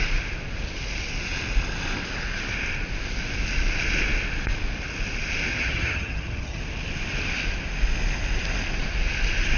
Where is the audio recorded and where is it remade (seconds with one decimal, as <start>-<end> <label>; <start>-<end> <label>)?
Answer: 0.0-5.5 recorded; 5.5-6.6 remade; 6.6-9.6 recorded